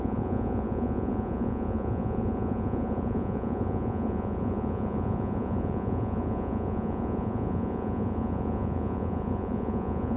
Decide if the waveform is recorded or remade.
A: remade